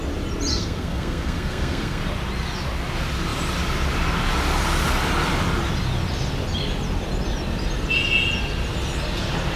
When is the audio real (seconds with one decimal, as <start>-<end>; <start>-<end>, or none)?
0.0-0.5; 2.0-9.6